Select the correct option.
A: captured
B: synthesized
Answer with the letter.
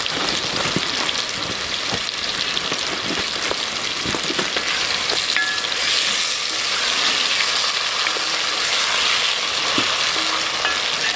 A